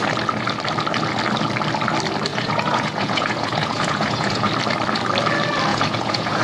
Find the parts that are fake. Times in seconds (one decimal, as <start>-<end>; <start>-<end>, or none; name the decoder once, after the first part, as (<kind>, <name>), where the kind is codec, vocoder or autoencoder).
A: 2.3-4.5 (vocoder, Vocos); 5.7-6.4